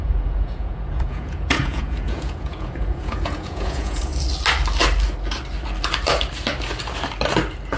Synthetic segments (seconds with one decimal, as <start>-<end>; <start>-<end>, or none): 0.0-4.1